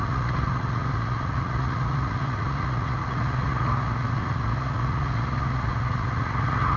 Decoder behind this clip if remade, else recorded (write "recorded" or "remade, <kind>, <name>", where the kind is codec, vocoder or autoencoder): remade, vocoder, Vocos